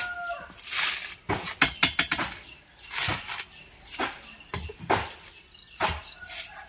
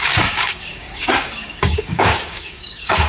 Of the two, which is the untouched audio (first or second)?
first